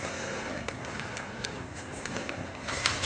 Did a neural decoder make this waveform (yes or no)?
yes